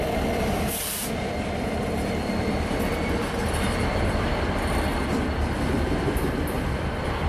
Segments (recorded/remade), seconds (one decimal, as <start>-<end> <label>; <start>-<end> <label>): 0.0-4.9 remade; 4.9-6.0 recorded; 6.0-7.3 remade